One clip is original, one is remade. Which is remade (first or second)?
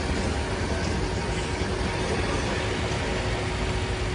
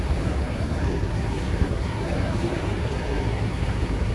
second